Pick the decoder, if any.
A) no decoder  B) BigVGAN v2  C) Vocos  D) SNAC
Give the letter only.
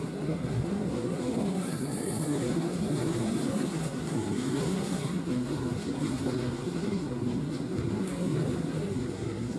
D